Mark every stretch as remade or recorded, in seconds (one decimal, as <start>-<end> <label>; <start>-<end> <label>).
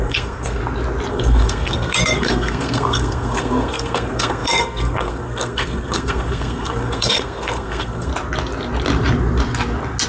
0.0-0.6 remade; 0.6-1.1 recorded; 1.1-8.1 remade; 8.1-10.1 recorded